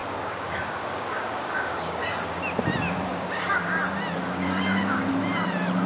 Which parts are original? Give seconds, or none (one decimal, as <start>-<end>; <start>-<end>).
2.4-3.1; 3.8-4.2; 5.1-5.9